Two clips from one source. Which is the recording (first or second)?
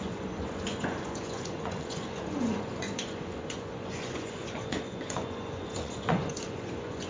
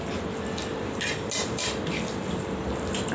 second